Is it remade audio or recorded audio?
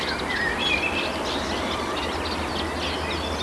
recorded